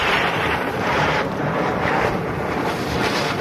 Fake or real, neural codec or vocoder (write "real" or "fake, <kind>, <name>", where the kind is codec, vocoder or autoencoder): fake, vocoder, BigVGAN v2